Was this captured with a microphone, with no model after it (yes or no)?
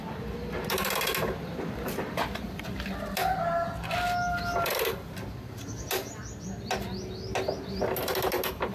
yes